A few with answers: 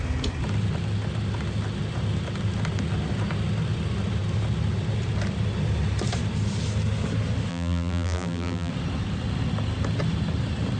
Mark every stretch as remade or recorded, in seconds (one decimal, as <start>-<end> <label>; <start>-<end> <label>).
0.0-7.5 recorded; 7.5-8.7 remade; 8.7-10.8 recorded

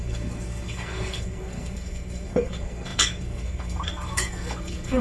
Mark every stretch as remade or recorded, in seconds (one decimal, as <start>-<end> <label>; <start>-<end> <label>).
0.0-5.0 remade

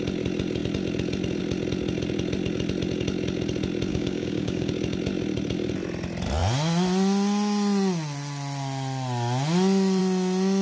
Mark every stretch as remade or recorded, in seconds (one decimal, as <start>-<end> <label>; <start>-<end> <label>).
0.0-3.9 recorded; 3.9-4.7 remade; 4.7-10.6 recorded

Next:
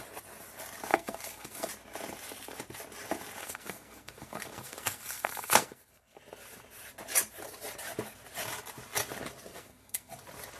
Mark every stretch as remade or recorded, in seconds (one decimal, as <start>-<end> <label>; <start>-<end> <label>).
0.0-0.9 recorded; 0.9-1.7 remade; 1.7-3.4 recorded; 3.4-6.2 remade; 6.2-9.5 recorded; 9.5-10.1 remade; 10.1-10.6 recorded